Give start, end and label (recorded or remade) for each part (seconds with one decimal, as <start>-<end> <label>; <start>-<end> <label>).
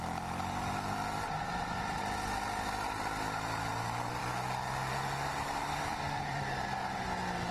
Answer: 0.0-5.9 recorded; 5.9-6.5 remade; 6.5-7.5 recorded